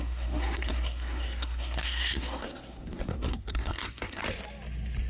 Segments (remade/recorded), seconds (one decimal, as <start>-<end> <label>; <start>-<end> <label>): 0.0-4.2 remade; 4.2-5.1 recorded